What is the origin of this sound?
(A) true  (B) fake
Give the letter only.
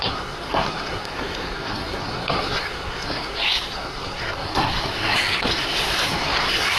B